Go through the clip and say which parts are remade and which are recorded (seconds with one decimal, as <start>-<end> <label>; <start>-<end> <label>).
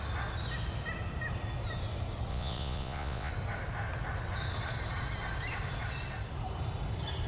0.0-2.3 recorded; 2.3-3.3 remade; 3.3-7.3 recorded